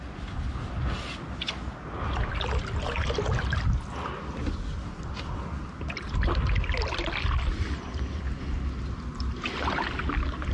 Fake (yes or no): no